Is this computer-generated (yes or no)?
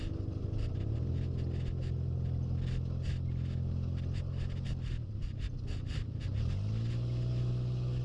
no